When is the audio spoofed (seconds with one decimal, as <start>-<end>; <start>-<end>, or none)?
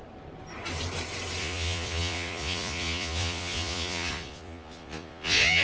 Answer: 1.4-5.6